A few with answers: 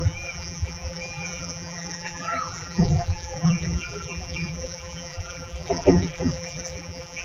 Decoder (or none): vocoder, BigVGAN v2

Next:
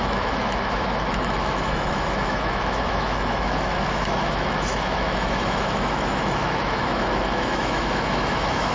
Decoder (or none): autoencoder, DAC-VAE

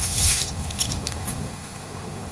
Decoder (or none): codec, SNAC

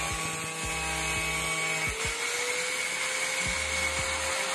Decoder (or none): none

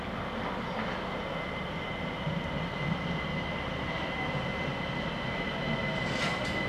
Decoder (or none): none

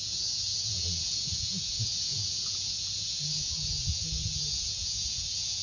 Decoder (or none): vocoder, Vocos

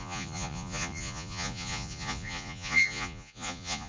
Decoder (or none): vocoder, Vocos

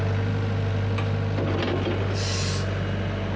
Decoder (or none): none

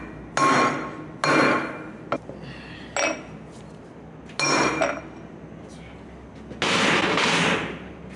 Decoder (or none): none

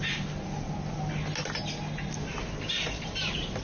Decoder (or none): none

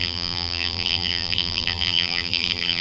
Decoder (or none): vocoder, BigVGAN v2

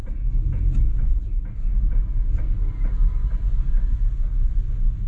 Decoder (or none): none